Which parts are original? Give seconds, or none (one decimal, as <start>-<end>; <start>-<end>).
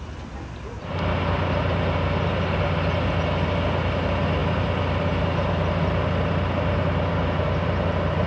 0.0-8.3